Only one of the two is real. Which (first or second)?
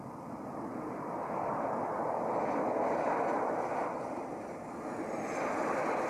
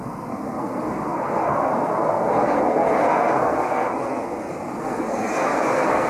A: first